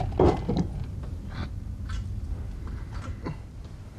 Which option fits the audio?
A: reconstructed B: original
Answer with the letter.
B